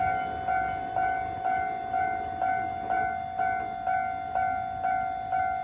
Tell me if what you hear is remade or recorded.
recorded